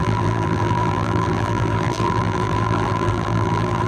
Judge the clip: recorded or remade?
remade